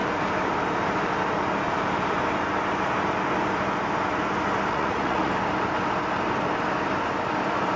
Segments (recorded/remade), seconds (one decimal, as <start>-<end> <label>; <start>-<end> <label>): 0.0-4.7 recorded; 4.7-5.3 remade; 5.3-7.8 recorded